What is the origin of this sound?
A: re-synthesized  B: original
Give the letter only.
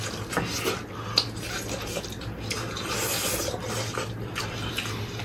B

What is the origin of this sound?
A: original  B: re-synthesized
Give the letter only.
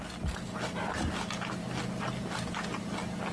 A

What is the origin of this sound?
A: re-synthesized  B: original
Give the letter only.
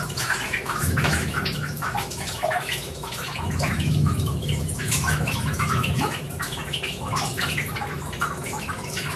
A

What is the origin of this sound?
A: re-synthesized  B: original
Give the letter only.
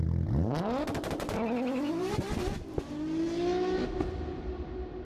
B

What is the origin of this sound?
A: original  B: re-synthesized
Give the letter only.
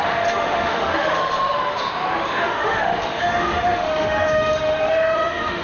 B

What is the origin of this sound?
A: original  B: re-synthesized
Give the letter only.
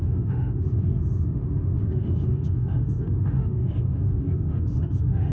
B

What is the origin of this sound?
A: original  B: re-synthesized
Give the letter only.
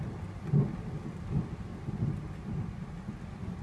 A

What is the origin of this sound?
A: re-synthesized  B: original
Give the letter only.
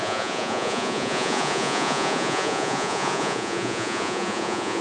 A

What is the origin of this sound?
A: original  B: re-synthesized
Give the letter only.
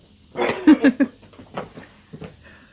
A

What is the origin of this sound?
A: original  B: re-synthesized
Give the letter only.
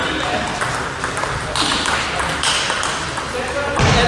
A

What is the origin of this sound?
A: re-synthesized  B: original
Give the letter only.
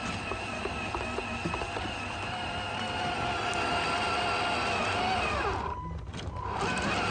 B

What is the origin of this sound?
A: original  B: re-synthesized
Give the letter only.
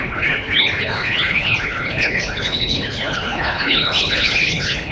B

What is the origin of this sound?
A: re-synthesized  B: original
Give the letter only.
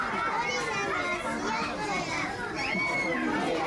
B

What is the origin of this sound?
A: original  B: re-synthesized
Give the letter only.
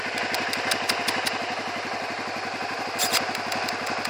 A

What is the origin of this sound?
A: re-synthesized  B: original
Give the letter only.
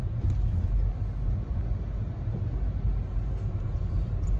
B